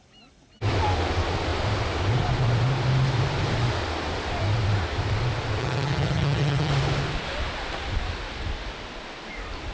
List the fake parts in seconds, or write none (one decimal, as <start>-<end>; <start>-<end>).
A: 5.6-6.7